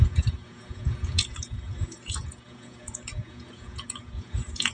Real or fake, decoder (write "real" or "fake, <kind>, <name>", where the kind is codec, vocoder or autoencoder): fake, vocoder, Vocos